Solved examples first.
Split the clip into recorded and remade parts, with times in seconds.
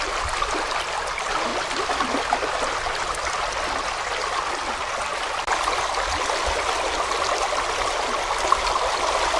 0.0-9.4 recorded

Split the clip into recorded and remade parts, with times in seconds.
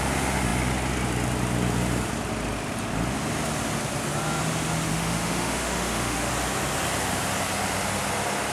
0.0-4.9 recorded; 4.9-6.3 remade; 6.3-8.5 recorded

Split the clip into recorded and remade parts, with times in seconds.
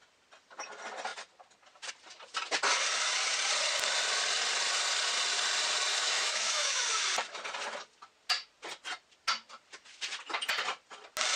0.0-5.9 recorded; 5.9-6.8 remade; 6.8-11.4 recorded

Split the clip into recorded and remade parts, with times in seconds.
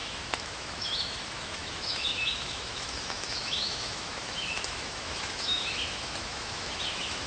0.0-7.3 remade